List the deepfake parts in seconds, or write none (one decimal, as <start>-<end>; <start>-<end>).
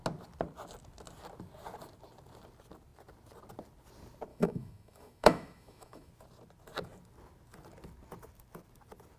4.3-6.1